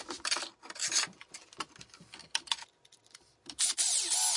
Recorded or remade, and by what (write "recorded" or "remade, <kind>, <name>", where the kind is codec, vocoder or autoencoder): recorded